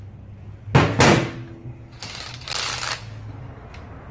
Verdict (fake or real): real